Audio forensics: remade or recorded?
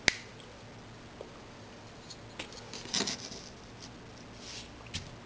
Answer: recorded